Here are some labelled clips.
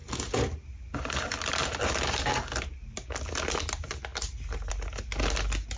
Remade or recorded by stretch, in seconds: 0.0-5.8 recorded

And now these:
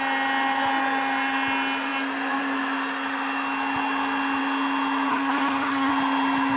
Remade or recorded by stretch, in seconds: 0.0-5.1 recorded; 5.1-5.9 remade; 5.9-6.6 recorded